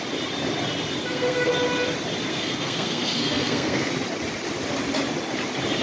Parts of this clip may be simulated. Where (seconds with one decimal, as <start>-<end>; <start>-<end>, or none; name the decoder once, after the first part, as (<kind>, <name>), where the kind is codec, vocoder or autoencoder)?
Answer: 1.0-1.5 (codec, SNAC); 2.3-3.9